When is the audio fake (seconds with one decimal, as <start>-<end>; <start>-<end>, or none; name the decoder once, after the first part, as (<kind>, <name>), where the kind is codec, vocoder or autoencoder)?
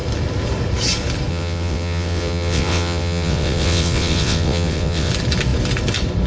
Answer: 1.3-5.1 (vocoder, WaveNeXt)